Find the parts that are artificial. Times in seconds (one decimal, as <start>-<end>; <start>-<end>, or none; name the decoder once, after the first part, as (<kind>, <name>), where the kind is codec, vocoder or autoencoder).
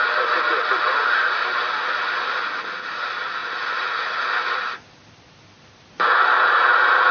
none